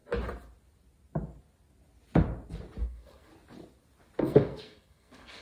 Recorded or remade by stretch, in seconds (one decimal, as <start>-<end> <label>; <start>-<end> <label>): 0.0-2.8 recorded; 2.8-3.3 remade; 3.3-4.2 recorded; 4.2-5.4 remade